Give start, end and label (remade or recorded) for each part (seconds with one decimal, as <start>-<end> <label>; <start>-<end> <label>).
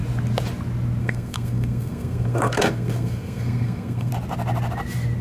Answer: 0.0-1.0 recorded; 1.0-4.1 remade; 4.1-5.2 recorded